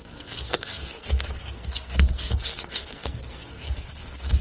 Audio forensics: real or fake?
fake